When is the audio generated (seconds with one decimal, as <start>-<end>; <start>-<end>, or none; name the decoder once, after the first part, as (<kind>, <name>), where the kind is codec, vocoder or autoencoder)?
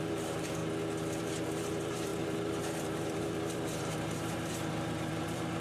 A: 0.0-0.6 (vocoder, BigVGAN v2); 1.2-5.6